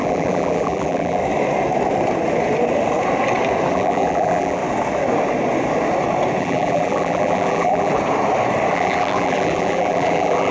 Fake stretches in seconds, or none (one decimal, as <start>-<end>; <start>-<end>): 0.0-1.2; 3.7-4.6; 6.4-7.9; 8.7-10.5